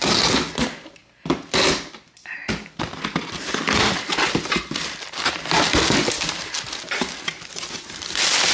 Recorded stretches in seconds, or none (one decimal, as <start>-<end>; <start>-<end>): 0.0-8.5